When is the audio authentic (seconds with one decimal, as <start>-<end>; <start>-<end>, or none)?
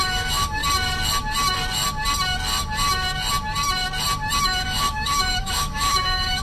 0.6-4.4